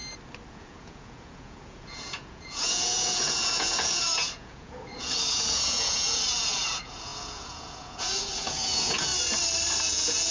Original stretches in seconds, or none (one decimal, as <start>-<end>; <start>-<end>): 0.0-0.5; 9.1-9.8